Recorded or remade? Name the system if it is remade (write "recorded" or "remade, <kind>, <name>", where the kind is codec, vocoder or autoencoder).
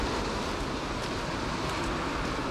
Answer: recorded